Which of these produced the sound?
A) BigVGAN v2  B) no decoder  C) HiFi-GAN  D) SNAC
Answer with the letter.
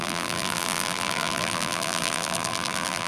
A